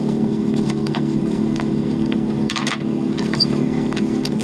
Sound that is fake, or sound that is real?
fake